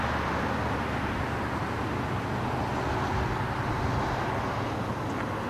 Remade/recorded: recorded